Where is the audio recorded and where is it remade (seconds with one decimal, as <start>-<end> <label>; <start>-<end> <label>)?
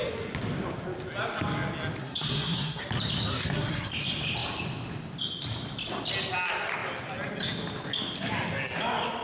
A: 0.0-2.0 recorded; 2.0-2.8 remade; 2.8-3.3 recorded; 3.3-3.9 remade; 3.9-9.2 recorded